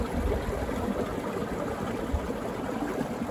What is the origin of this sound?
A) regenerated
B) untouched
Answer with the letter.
B